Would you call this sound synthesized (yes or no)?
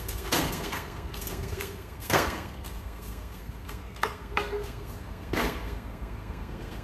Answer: yes